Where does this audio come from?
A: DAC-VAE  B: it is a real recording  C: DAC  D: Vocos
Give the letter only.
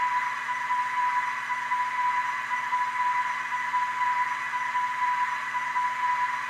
B